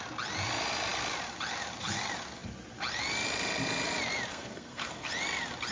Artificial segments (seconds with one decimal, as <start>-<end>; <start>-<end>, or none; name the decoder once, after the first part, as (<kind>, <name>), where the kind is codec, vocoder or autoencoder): 4.3-5.1 (codec, SNAC)